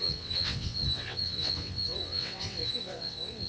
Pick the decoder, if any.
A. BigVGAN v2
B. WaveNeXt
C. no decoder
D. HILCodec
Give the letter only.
B